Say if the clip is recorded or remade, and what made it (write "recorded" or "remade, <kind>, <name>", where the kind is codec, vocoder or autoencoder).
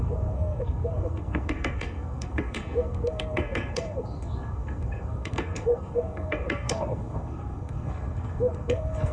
remade, codec, SNAC